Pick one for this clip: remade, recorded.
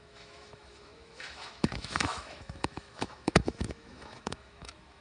remade